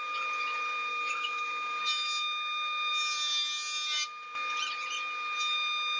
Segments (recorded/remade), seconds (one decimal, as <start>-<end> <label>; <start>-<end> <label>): 0.0-0.9 recorded; 0.9-1.8 remade; 1.8-6.0 recorded